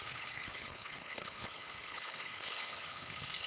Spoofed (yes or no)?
yes